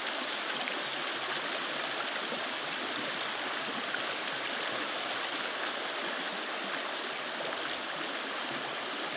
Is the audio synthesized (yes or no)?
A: no